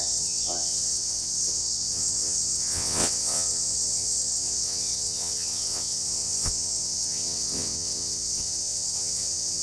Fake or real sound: fake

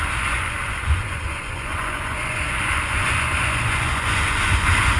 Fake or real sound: fake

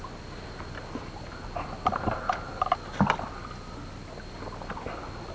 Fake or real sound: real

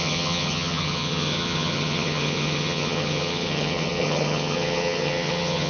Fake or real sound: fake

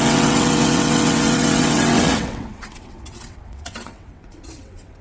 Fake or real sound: fake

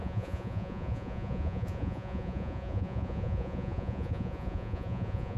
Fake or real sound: fake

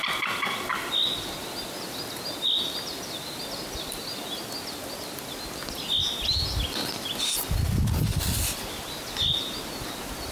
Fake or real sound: real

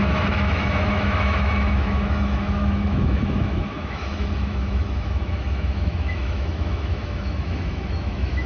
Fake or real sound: fake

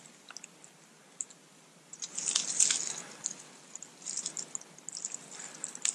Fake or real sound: real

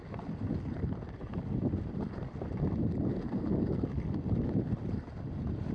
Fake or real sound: real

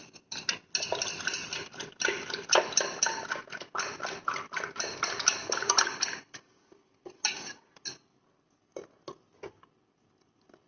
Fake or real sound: real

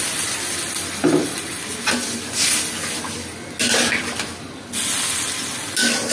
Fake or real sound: real